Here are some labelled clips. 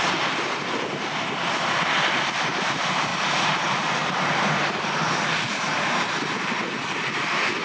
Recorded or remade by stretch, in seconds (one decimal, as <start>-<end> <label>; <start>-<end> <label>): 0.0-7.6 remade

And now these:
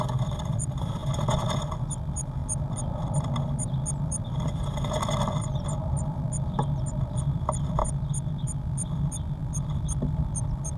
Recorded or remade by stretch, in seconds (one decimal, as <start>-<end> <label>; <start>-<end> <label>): 0.0-1.0 remade; 1.0-1.5 recorded; 1.5-7.8 remade; 7.8-8.6 recorded; 8.6-10.8 remade

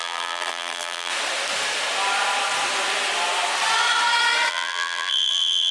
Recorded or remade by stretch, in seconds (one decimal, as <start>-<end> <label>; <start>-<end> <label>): 0.0-1.1 remade; 1.1-4.5 recorded; 4.5-5.7 remade

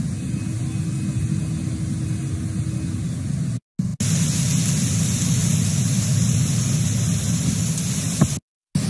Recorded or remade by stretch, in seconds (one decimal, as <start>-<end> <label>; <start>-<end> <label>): 0.0-5.4 recorded; 5.4-7.8 remade; 7.8-8.9 recorded